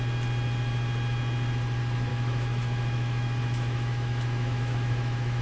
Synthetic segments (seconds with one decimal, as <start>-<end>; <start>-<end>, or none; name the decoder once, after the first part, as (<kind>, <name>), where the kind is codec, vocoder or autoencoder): 2.1-5.4 (autoencoder, DAC-VAE)